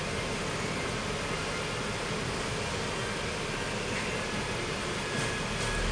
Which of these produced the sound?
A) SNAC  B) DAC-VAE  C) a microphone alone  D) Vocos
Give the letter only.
C